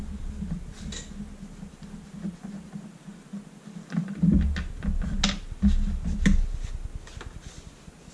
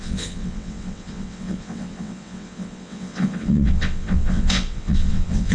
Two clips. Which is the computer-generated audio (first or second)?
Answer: second